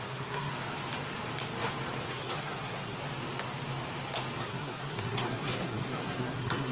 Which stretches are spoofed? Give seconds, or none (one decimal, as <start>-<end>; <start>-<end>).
0.0-0.5; 2.1-3.0; 4.4-6.7